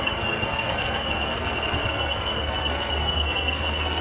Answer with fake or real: fake